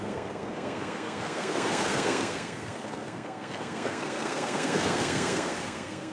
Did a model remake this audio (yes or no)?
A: yes